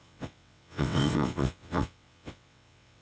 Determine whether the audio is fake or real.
fake